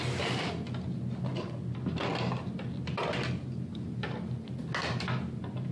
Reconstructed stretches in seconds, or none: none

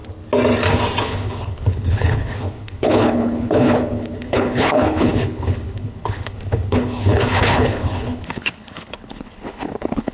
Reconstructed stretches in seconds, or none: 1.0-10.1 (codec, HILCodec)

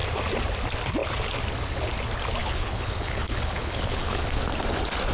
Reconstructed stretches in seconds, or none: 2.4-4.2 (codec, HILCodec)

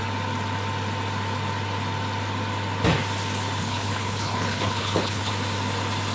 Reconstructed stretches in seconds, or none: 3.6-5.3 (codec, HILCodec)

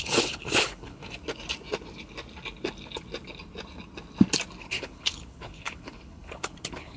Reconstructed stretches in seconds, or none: 0.0-1.0 (codec, HILCodec); 4.6-7.0

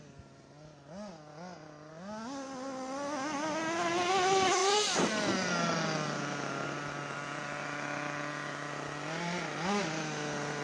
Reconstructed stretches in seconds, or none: none

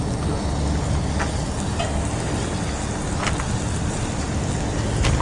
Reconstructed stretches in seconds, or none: none